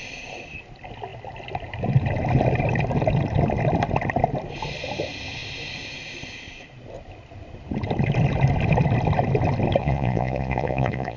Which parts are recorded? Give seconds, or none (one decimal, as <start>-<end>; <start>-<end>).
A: 0.0-9.8